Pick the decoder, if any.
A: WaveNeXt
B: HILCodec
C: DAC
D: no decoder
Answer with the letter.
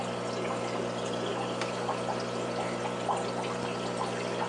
D